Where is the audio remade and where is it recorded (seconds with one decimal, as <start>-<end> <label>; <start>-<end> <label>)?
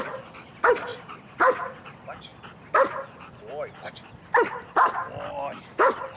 0.0-6.2 recorded